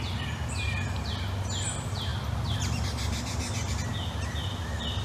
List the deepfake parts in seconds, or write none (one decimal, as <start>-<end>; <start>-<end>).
none